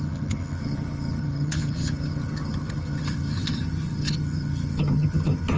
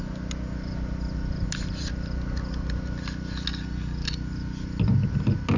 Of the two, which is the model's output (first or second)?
first